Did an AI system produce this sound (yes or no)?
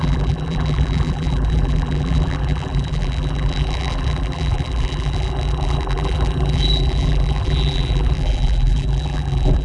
yes